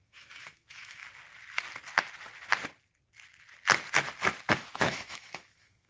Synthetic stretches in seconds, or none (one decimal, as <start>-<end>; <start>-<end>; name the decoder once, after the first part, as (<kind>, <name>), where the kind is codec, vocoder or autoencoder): 0.0-1.0 (autoencoder, DAC-VAE); 4.5-5.9